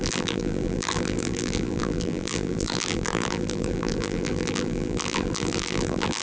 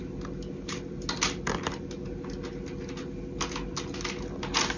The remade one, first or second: first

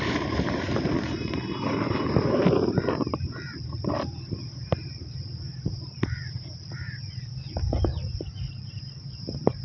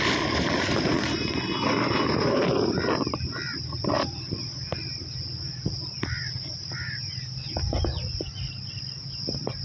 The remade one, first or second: first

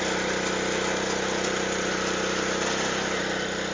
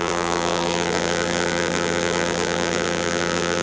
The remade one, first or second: second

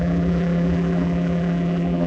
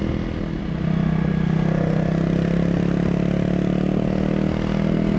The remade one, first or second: first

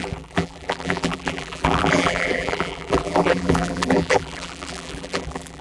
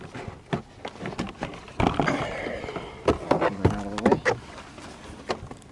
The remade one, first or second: first